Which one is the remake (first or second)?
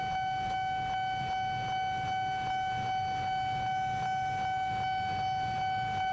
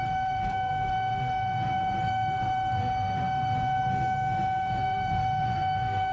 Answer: second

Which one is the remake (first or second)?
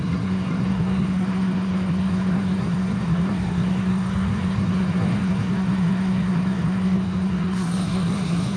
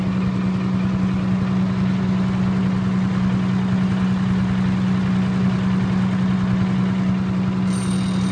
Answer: first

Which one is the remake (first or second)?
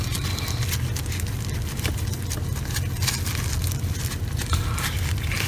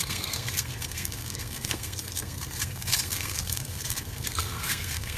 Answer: second